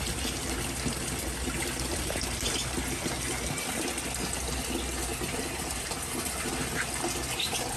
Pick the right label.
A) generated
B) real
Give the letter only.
B